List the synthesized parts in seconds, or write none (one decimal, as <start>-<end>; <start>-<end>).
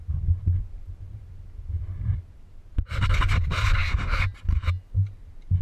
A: 1.9-2.7